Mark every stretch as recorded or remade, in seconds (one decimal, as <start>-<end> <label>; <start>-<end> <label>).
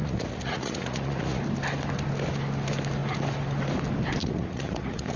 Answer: 0.0-1.4 remade; 1.4-4.2 recorded; 4.2-5.2 remade